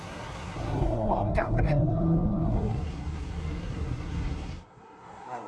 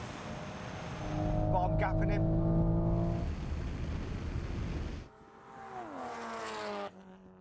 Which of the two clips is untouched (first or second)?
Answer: second